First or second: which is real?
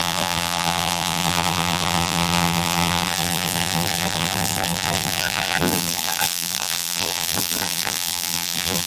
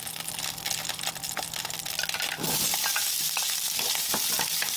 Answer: second